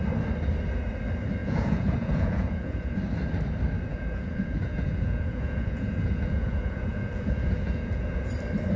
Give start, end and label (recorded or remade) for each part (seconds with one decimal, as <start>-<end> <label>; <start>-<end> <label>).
0.0-1.4 recorded; 1.4-3.0 remade; 3.0-3.9 recorded; 3.9-8.3 remade; 8.3-8.8 recorded